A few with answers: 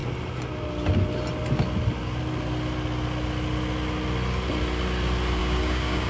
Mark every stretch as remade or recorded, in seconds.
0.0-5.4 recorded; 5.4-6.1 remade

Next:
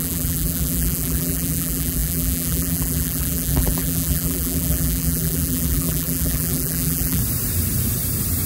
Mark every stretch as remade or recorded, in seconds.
0.0-7.2 remade; 7.2-8.5 recorded

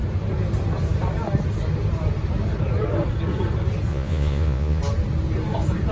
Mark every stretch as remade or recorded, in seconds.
0.0-3.9 recorded; 3.9-4.8 remade; 4.8-5.9 recorded